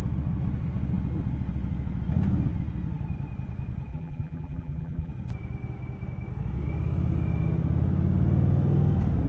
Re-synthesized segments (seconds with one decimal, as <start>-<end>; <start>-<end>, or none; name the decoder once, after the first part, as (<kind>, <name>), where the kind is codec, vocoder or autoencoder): 3.9-5.1 (vocoder, BigVGAN v2)